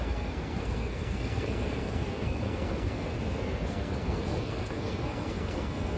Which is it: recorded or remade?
remade